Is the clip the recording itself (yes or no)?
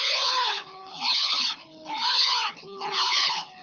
no